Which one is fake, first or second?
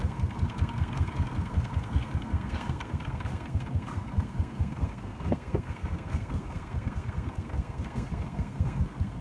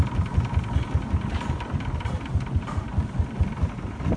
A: first